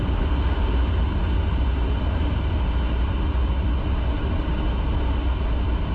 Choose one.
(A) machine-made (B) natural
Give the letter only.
B